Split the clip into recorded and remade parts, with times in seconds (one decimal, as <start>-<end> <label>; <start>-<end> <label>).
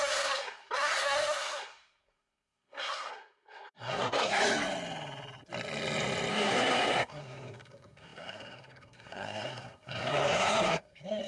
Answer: 0.0-4.4 remade; 4.4-6.3 recorded; 6.3-11.3 remade